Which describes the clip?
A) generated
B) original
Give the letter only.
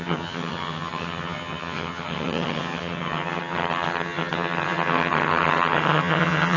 A